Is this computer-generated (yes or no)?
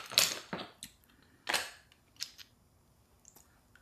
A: no